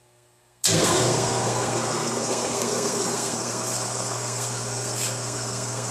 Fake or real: fake